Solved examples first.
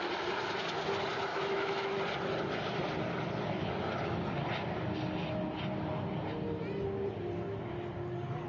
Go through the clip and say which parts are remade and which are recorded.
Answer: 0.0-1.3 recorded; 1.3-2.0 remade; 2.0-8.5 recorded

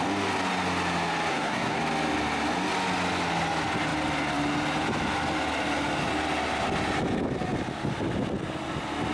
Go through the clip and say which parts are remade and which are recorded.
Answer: 0.0-1.3 recorded; 1.3-1.8 remade; 1.8-9.1 recorded

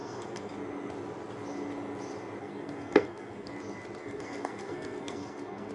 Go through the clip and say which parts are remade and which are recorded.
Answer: 0.0-0.5 remade; 0.5-2.4 recorded; 2.4-3.5 remade; 3.5-4.0 recorded; 4.0-5.7 remade